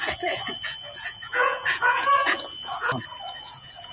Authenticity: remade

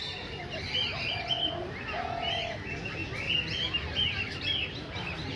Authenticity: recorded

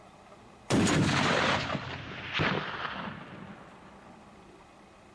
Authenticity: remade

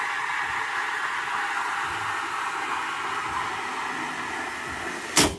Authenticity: recorded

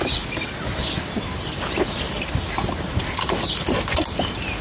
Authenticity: recorded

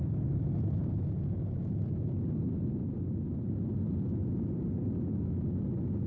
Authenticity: recorded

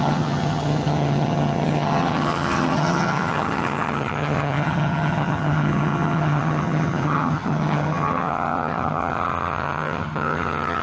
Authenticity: remade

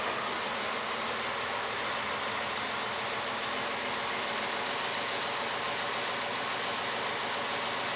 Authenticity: recorded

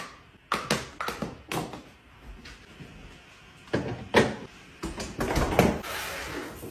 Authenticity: recorded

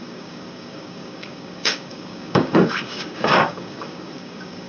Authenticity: remade